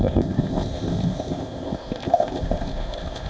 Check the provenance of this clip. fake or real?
fake